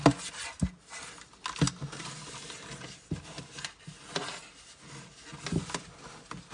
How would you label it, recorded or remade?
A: recorded